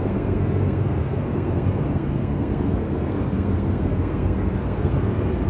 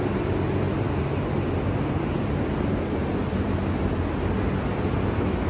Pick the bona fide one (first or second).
second